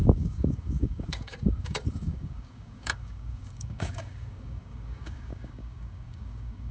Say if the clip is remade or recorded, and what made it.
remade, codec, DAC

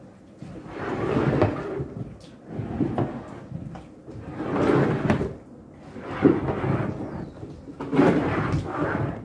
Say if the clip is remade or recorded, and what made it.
recorded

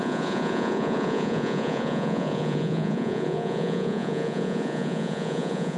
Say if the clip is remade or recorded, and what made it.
remade, vocoder, Vocos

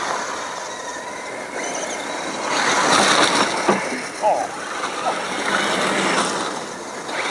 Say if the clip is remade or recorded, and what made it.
recorded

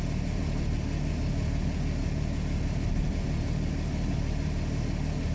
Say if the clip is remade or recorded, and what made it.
recorded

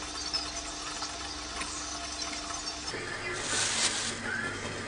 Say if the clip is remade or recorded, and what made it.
recorded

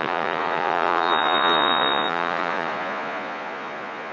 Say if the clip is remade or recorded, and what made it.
remade, vocoder, Vocos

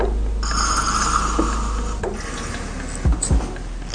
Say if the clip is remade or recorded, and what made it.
recorded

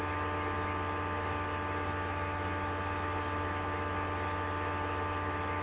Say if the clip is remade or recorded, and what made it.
recorded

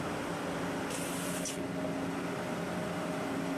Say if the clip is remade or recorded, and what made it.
recorded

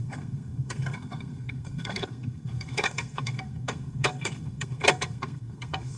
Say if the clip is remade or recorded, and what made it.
remade, codec, SNAC